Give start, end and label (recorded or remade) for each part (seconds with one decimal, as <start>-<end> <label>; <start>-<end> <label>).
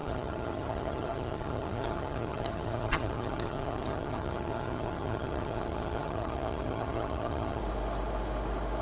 0.0-7.6 remade; 7.6-8.8 recorded